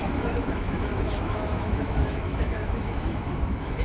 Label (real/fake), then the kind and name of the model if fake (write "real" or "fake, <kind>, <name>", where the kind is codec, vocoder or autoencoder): fake, autoencoder, DAC-VAE